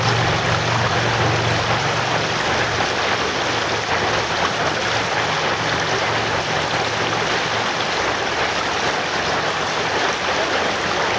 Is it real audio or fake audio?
real